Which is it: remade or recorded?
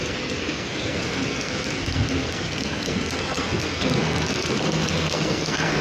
remade